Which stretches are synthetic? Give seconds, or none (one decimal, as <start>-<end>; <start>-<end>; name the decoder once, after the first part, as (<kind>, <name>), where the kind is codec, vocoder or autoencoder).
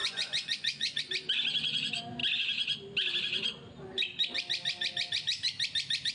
0.0-1.0 (vocoder, Vocos)